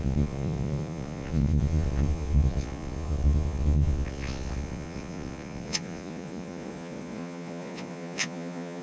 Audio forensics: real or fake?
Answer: fake